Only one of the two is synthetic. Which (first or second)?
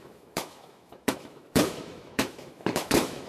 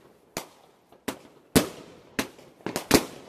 first